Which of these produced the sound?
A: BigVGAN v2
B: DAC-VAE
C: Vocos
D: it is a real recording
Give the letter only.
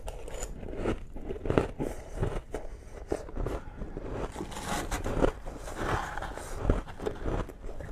D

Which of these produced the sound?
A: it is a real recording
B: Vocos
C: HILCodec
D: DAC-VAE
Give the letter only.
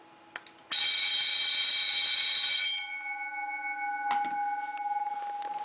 A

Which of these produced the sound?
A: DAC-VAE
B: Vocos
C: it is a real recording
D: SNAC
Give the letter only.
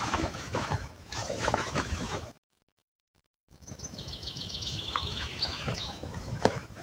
A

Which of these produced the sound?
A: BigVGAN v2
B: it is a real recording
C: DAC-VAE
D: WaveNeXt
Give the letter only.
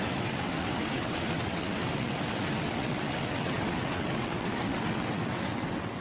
D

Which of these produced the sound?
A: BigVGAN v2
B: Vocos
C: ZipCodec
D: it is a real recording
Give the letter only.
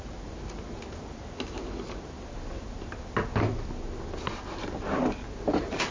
D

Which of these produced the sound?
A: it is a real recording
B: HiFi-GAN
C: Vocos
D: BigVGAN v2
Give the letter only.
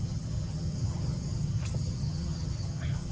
B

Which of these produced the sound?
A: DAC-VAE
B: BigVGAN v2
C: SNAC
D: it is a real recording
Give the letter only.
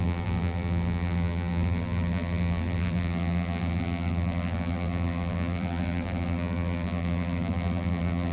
B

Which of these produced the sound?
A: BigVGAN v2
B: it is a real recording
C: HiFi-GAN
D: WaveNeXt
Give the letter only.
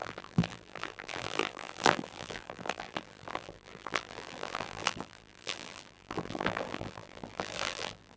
A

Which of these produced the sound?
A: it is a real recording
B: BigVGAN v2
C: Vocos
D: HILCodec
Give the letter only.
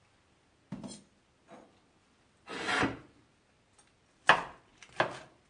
A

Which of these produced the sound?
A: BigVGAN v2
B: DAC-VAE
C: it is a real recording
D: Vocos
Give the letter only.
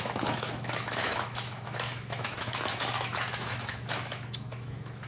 B